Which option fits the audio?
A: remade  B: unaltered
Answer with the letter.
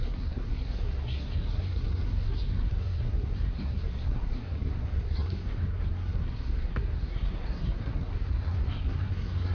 A